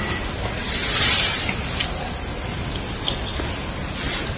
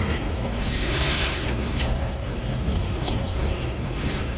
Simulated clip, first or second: second